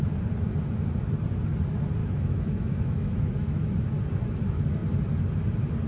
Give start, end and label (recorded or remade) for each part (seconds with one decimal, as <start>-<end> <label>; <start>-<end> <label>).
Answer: 0.0-2.0 recorded; 2.0-3.8 remade; 3.8-5.9 recorded